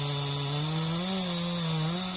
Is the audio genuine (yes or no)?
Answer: yes